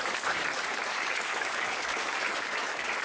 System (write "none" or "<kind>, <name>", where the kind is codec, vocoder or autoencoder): codec, DAC